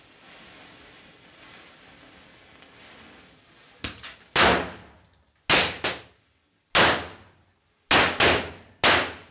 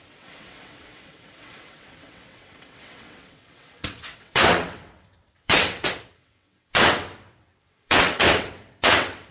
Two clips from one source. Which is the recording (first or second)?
first